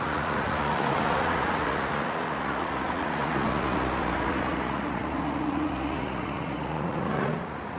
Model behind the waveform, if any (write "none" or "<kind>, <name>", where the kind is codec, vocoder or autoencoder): vocoder, Vocos